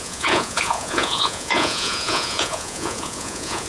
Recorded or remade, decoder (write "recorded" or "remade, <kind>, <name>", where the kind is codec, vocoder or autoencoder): remade, vocoder, Vocos